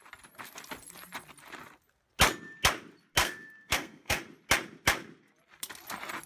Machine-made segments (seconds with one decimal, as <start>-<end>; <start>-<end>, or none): 3.2-4.2